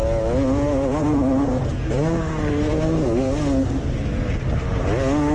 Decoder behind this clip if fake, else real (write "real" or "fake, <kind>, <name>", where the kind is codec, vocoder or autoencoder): real